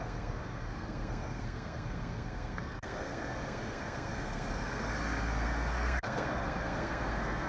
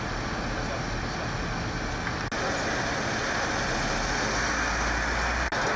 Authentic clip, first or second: second